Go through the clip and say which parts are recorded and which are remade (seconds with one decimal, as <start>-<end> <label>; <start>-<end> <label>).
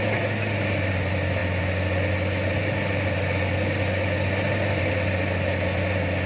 0.0-6.3 recorded